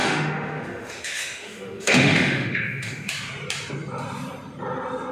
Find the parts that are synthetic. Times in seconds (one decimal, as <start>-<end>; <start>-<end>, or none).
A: 0.0-3.1